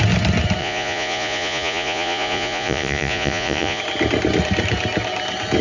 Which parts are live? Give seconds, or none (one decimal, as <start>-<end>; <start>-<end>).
0.0-0.6; 3.8-5.6